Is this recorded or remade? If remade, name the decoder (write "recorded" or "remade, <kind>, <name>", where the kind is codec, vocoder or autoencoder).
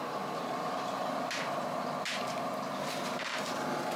recorded